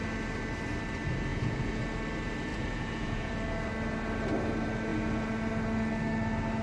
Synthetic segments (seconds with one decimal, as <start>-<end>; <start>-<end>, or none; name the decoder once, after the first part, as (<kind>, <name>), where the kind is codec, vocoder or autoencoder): 1.3-1.8 (vocoder, Vocos); 2.5-3.3